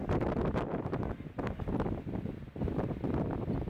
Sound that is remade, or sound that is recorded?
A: recorded